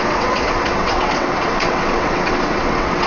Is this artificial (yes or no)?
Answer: yes